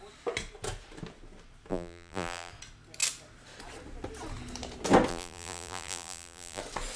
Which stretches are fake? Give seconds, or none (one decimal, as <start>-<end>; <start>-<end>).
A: 1.7-2.5; 5.1-6.6